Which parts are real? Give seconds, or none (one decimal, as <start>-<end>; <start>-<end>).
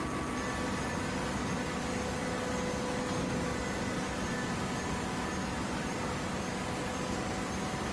0.0-7.9